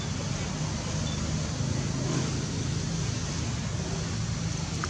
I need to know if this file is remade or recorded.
recorded